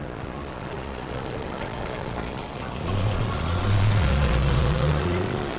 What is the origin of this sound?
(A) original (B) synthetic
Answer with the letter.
B